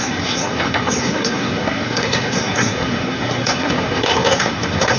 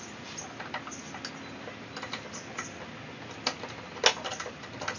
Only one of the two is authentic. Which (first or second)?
second